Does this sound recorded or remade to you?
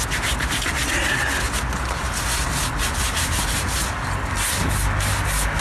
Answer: recorded